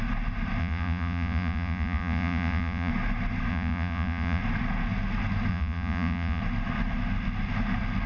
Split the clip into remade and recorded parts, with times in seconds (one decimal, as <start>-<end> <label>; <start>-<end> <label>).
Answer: 0.0-0.6 recorded; 0.6-2.9 remade; 2.9-3.5 recorded; 3.5-4.4 remade; 4.4-5.5 recorded; 5.5-6.4 remade; 6.4-8.1 recorded